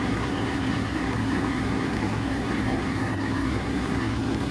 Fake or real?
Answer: fake